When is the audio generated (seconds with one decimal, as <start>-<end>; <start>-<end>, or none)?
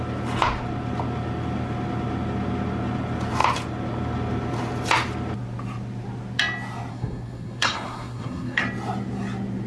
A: 6.9-8.6